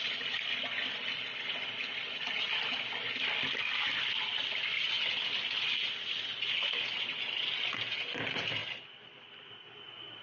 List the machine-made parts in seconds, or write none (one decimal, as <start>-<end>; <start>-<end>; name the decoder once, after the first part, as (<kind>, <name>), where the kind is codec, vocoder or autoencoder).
none